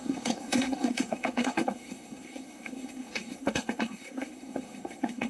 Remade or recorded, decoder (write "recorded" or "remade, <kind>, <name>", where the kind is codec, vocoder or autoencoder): remade, codec, SNAC